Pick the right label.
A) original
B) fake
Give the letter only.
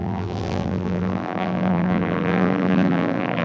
B